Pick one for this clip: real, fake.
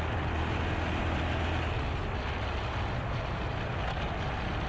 real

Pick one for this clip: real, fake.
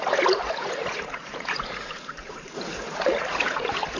fake